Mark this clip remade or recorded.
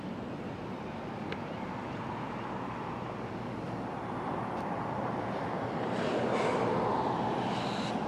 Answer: recorded